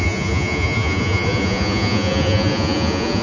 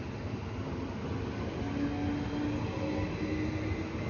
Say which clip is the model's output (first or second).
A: first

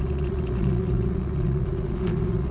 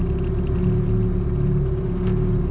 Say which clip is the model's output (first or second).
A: first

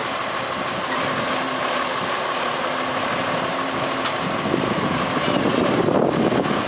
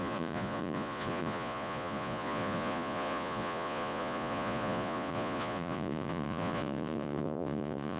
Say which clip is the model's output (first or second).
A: second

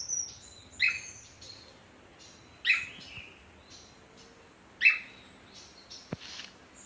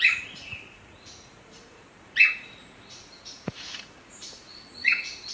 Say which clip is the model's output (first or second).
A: second